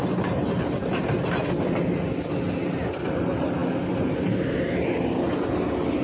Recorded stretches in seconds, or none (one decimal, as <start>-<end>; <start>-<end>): 0.0-6.0